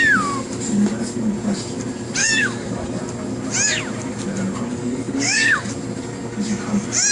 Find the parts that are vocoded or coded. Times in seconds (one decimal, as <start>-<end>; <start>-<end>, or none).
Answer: 2.2-3.0; 4.7-5.7